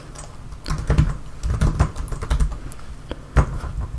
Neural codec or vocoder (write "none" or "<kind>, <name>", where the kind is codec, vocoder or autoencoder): none